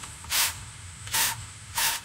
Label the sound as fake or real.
fake